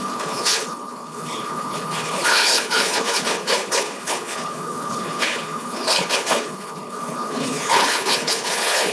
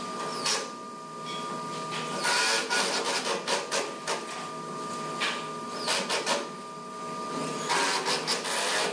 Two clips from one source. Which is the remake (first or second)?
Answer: first